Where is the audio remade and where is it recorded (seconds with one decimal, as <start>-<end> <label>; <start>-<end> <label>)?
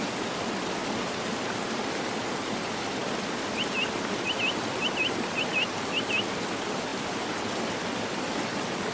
0.0-8.9 recorded